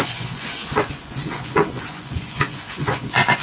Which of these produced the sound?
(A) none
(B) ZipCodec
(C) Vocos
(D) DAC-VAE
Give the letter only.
C